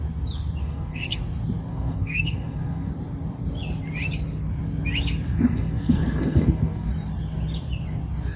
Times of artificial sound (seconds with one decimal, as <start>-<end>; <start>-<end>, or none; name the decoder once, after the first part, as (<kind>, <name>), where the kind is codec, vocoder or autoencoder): 0.6-1.2 (codec, SNAC); 1.7-2.9; 5.3-6.9